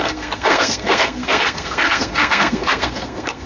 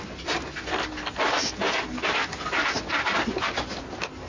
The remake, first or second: first